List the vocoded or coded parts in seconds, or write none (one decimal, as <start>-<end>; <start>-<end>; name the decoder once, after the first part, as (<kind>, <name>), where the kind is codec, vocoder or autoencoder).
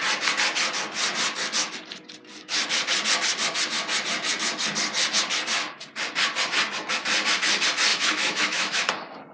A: 7.9-8.9 (autoencoder, DAC-VAE)